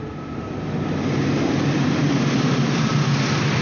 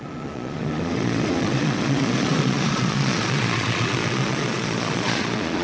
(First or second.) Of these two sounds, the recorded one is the first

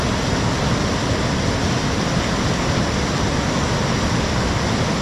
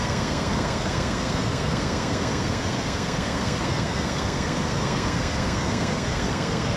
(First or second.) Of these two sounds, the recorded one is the first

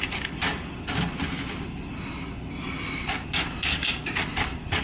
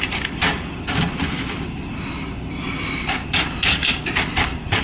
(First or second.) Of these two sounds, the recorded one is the first